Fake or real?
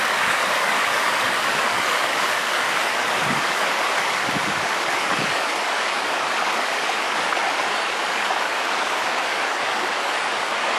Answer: fake